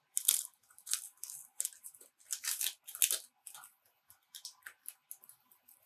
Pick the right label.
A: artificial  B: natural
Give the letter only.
B